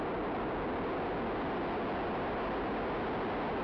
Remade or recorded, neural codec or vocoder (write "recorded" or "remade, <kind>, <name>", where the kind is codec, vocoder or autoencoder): recorded